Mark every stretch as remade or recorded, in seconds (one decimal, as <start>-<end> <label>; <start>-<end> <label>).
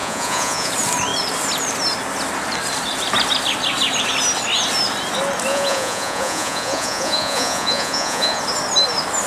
0.0-0.7 remade; 0.7-5.5 recorded; 5.5-8.4 remade; 8.4-9.3 recorded